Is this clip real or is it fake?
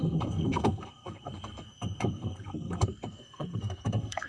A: fake